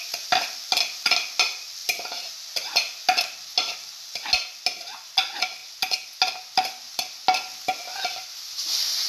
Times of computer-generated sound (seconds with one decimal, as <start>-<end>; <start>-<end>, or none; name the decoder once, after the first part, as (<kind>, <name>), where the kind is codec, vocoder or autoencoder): 1.8-2.4 (vocoder, BigVGAN v2); 7.9-8.7